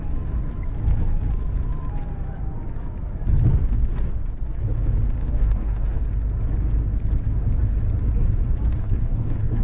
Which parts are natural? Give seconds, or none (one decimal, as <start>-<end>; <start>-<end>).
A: 0.0-5.2; 6.0-8.8